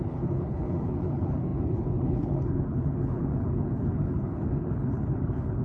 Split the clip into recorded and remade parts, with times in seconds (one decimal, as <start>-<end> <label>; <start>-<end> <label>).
0.0-5.6 remade